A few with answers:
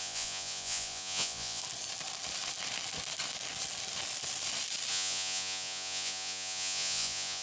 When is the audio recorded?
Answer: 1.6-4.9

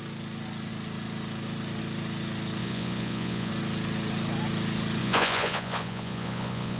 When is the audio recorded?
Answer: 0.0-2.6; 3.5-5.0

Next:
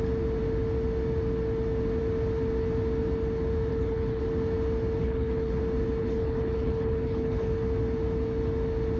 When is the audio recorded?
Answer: 0.0-3.7; 4.2-5.0; 5.6-6.0; 7.5-9.0